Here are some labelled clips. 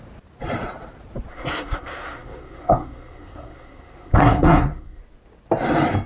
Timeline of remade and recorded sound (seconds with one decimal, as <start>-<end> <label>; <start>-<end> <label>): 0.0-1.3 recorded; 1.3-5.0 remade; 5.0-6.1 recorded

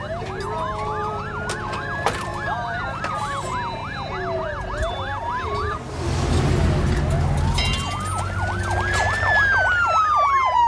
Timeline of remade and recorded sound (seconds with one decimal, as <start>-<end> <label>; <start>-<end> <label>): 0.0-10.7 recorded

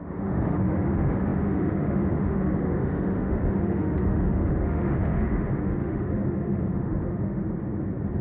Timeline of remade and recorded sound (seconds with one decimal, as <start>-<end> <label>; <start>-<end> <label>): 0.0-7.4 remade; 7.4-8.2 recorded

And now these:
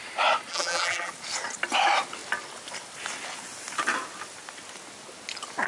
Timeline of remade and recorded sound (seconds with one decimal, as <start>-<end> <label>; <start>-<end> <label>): 0.0-0.5 recorded; 0.5-1.1 remade; 1.1-5.7 recorded